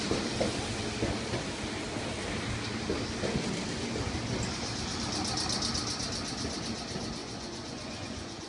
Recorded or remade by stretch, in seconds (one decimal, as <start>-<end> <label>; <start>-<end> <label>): 0.0-7.2 recorded; 7.2-8.5 remade